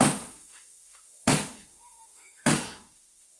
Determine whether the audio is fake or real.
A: fake